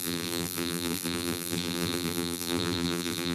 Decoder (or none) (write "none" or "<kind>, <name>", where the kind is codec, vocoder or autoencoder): vocoder, BigVGAN v2